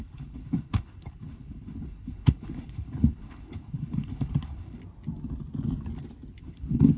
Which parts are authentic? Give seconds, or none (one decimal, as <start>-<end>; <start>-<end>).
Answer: 4.8-6.4